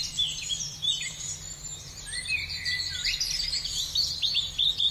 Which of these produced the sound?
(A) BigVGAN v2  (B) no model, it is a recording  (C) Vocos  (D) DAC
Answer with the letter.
A